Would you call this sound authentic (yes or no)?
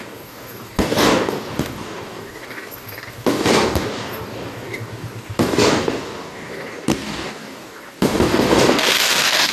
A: no